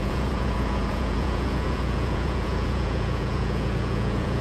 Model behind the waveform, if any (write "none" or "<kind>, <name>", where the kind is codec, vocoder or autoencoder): vocoder, Vocos